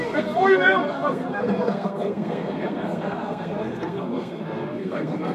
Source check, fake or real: fake